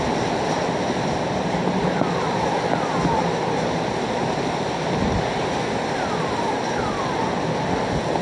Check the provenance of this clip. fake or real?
real